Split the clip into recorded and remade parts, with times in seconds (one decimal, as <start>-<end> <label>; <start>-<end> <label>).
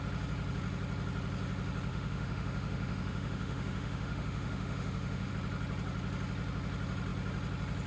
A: 0.0-1.9 recorded; 1.9-5.3 remade; 5.3-7.9 recorded